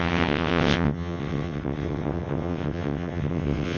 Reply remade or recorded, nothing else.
remade